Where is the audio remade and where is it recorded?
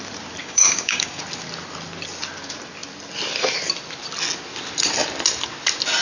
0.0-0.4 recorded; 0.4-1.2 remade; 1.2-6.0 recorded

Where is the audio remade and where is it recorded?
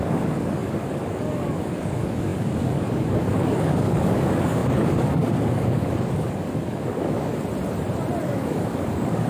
0.0-7.3 remade; 7.3-8.2 recorded; 8.2-9.3 remade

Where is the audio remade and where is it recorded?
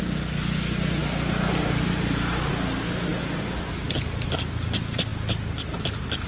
0.0-6.3 recorded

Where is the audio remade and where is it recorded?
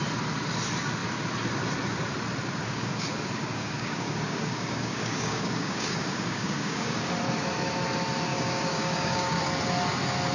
0.0-2.6 recorded; 2.6-7.2 remade; 7.2-8.3 recorded; 8.3-9.4 remade; 9.4-10.3 recorded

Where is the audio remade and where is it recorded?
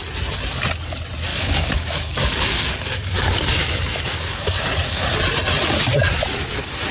0.0-1.3 recorded; 1.3-5.2 remade; 5.2-6.9 recorded